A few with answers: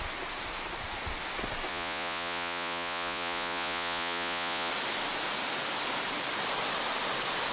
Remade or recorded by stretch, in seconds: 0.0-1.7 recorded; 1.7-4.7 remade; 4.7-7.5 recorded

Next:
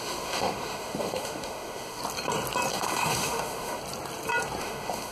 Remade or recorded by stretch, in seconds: 0.0-2.0 remade; 2.0-2.7 recorded; 2.7-3.8 remade; 3.8-4.6 recorded; 4.6-5.1 remade

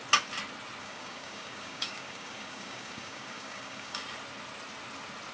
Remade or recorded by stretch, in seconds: 0.0-0.8 recorded; 0.8-4.0 remade; 4.0-5.3 recorded

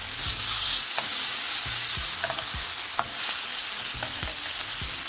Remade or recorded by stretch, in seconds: 0.0-1.9 remade; 1.9-3.0 recorded; 3.0-4.3 remade; 4.3-5.1 recorded

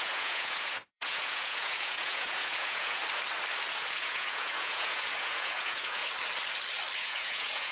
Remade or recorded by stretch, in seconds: 0.0-3.0 remade; 3.0-3.7 recorded; 3.7-6.0 remade; 6.0-7.0 recorded; 7.0-7.7 remade

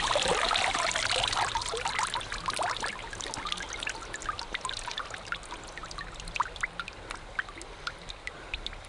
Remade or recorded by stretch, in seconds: 0.0-8.9 recorded